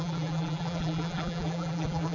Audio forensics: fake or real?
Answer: fake